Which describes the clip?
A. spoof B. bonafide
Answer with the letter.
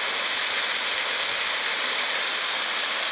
B